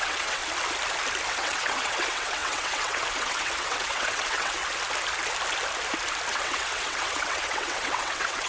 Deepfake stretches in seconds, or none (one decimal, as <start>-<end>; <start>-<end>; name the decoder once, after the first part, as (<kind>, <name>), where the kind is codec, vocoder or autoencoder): 0.0-0.4 (vocoder, WaveNeXt); 1.3-4.6; 6.3-8.5